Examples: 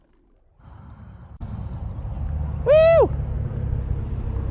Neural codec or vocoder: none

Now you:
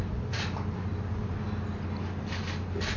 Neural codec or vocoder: none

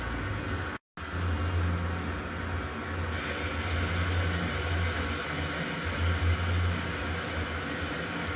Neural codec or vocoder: none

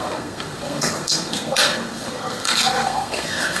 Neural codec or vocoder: codec, SNAC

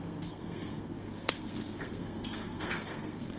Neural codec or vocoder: codec, SNAC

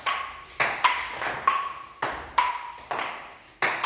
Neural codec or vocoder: none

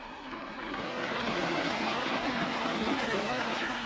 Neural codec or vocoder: codec, SNAC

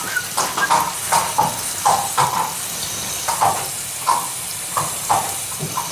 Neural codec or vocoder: none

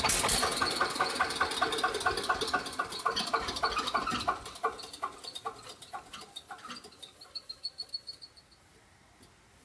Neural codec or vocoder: none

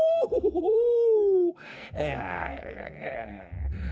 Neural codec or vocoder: codec, SNAC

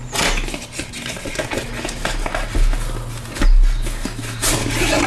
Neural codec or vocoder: none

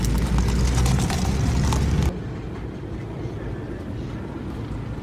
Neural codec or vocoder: none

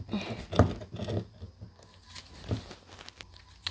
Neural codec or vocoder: none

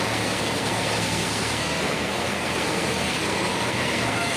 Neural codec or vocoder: codec, SNAC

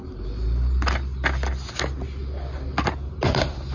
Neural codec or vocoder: none